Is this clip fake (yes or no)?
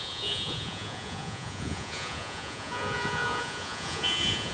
yes